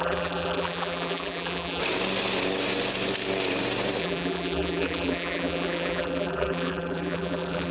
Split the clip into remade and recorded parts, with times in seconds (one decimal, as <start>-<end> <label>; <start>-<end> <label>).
0.0-1.8 remade; 1.8-4.0 recorded; 4.0-7.7 remade